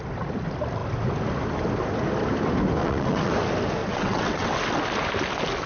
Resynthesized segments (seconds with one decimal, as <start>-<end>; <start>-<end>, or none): 2.8-3.3; 3.8-4.5